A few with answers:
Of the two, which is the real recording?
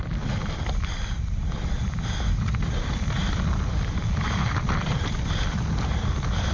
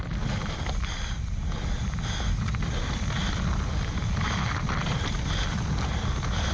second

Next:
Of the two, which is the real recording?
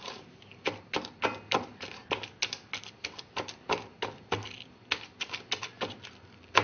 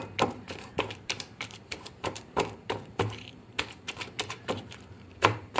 first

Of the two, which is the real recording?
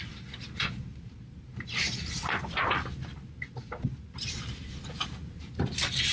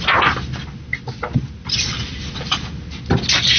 second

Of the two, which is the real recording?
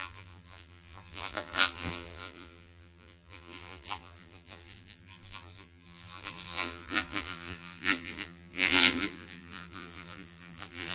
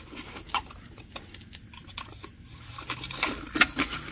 second